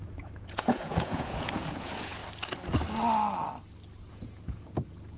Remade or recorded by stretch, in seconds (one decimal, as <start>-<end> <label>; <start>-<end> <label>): 0.0-2.2 remade; 2.2-4.1 recorded; 4.1-5.2 remade

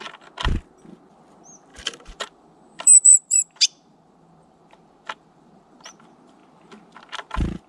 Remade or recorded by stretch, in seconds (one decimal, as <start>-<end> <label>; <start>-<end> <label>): 0.0-1.7 recorded; 1.7-6.0 remade; 6.0-7.7 recorded

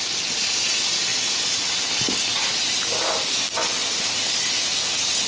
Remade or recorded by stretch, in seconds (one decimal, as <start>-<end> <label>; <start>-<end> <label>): 0.0-5.3 recorded

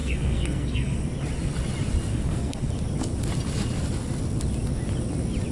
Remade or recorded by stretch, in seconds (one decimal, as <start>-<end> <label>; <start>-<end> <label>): 0.0-1.0 remade; 1.0-2.1 recorded; 2.1-2.7 remade; 2.7-5.5 recorded

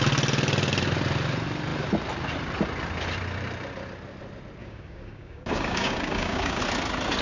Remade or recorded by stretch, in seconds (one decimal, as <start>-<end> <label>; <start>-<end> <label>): 0.0-4.6 recorded; 4.6-6.6 remade; 6.6-7.2 recorded